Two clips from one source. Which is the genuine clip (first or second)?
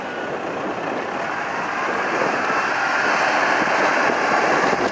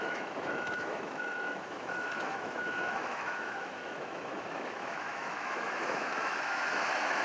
first